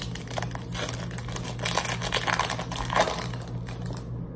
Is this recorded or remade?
recorded